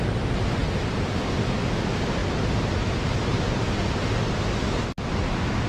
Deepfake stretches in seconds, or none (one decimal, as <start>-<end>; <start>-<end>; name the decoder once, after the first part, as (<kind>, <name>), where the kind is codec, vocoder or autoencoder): none